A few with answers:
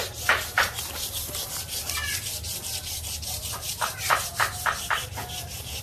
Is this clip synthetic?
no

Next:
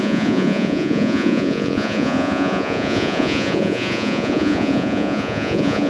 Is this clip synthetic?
yes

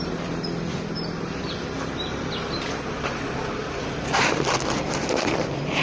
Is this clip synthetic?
yes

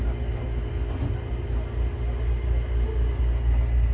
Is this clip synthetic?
no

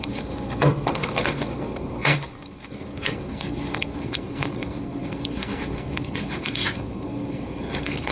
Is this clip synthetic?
yes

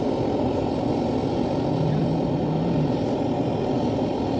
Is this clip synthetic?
no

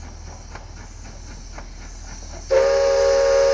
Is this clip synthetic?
no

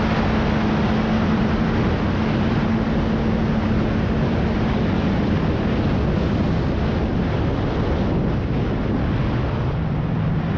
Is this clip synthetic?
no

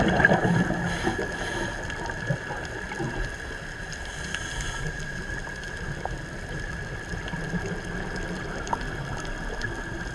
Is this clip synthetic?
no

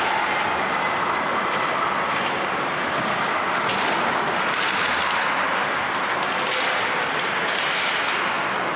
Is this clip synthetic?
no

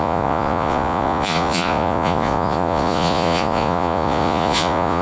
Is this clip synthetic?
yes